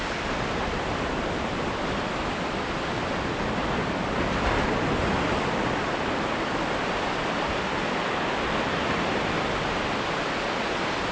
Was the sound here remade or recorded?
recorded